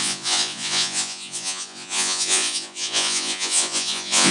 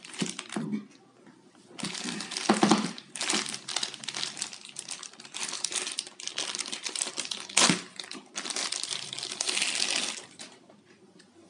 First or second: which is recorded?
second